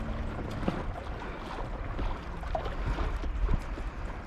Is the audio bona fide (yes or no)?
yes